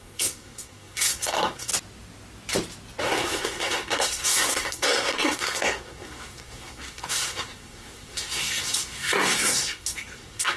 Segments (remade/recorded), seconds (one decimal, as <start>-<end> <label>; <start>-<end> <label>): 0.0-1.7 remade; 1.7-3.0 recorded; 3.0-10.6 remade